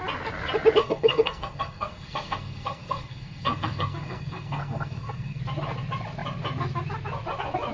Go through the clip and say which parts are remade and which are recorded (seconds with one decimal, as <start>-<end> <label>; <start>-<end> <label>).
0.0-0.8 recorded; 0.8-5.4 remade; 5.4-7.7 recorded